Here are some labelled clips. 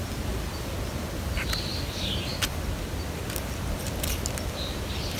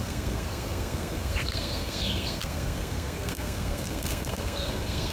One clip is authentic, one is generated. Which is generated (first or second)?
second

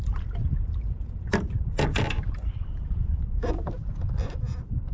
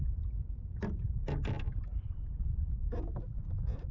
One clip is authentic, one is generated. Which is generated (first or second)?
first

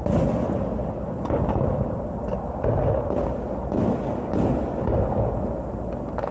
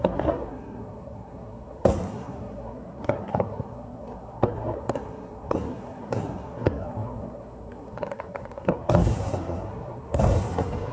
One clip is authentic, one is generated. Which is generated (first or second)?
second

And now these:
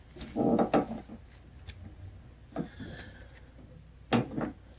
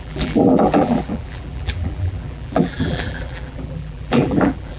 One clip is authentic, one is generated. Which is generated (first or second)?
second